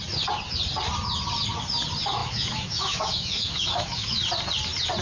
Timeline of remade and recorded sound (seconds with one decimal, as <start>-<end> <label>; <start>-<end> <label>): 0.0-2.2 recorded; 2.2-4.2 remade; 4.2-5.0 recorded